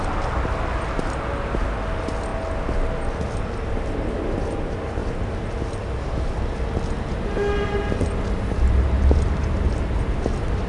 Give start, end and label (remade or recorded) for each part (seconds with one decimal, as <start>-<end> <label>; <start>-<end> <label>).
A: 0.0-10.7 recorded